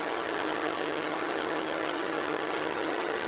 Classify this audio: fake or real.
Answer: fake